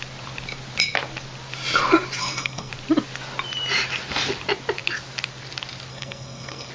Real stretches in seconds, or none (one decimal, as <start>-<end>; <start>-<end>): 0.0-2.2; 2.7-5.9